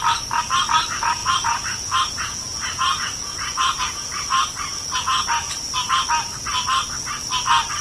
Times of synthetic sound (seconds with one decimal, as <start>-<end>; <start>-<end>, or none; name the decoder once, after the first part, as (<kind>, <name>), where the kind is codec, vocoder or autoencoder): 1.2-5.6 (vocoder, Vocos)